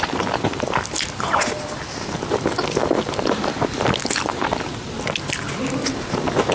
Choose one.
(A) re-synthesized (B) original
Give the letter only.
B